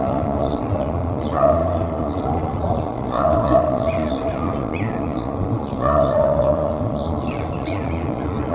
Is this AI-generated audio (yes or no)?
yes